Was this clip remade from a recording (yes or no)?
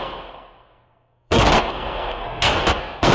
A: yes